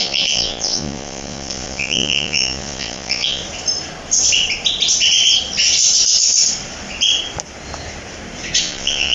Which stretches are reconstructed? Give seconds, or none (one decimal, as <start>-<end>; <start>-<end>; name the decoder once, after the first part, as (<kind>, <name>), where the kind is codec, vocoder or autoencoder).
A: 0.0-3.4 (vocoder, Vocos); 8.6-9.1